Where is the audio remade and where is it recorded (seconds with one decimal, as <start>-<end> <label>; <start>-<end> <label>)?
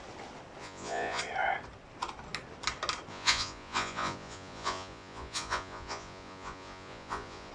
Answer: 0.0-0.6 recorded; 0.6-1.2 remade; 1.2-3.1 recorded; 3.1-7.5 remade